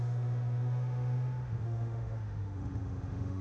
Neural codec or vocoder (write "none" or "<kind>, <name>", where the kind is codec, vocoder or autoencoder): autoencoder, DAC-VAE